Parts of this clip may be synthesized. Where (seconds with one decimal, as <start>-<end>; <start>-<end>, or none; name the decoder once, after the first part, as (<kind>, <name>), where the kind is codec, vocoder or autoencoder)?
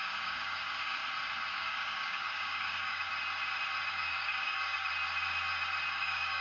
0.0-1.0 (codec, DAC); 1.5-3.1; 3.9-4.9; 5.9-6.4